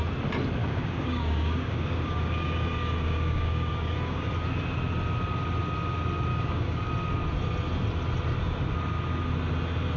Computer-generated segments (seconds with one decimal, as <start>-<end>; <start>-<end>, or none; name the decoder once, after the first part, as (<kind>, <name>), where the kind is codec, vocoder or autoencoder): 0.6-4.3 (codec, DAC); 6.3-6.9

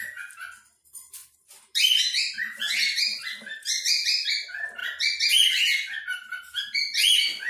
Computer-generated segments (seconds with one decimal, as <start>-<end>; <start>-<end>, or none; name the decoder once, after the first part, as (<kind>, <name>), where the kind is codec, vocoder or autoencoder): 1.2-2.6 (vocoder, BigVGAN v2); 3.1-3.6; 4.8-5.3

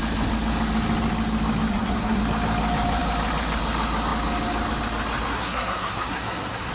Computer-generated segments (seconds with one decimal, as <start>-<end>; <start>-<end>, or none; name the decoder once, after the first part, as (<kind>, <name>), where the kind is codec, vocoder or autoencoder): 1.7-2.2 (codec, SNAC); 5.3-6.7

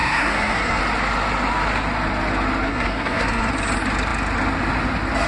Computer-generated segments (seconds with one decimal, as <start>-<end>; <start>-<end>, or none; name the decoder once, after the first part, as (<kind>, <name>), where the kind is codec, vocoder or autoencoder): 0.0-0.8 (codec, SNAC); 2.7-3.5